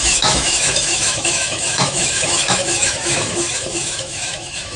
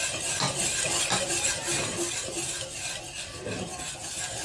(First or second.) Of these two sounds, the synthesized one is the first